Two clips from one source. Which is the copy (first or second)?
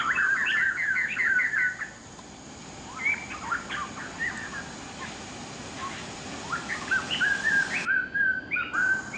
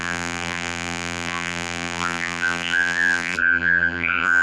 second